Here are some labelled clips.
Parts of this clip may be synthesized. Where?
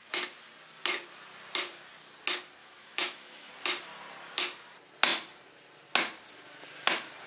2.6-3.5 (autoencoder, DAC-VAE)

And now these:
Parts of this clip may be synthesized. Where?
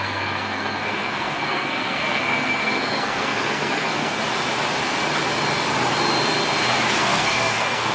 0.0-4.2 (codec, SNAC); 7.0-7.9